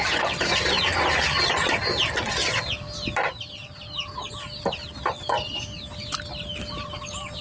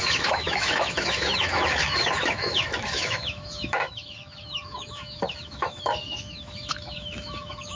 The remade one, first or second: second